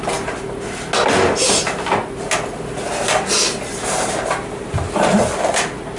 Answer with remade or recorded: recorded